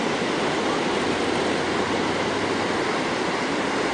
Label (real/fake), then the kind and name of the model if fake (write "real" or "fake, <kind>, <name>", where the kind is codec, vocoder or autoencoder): real